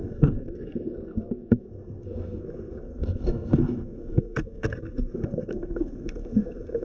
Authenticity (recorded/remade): remade